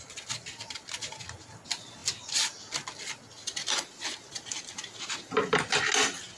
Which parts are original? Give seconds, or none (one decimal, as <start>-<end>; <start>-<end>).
0.0-3.4; 5.6-6.4

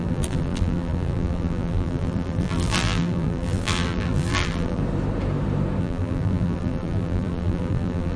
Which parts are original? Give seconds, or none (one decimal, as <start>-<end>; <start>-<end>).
4.8-5.8

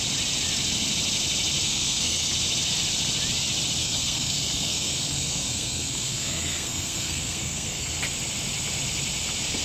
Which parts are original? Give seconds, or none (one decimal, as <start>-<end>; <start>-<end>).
0.0-1.6; 2.3-3.8; 8.0-9.6

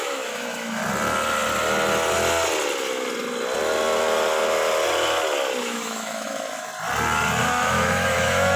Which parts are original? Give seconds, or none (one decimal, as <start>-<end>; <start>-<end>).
0.8-5.6; 6.7-7.4

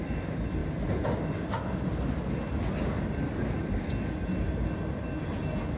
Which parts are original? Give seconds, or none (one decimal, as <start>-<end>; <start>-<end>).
0.0-5.8